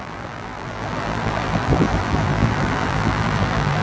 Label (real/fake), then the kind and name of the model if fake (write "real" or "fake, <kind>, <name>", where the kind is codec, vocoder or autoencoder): fake, vocoder, BigVGAN v2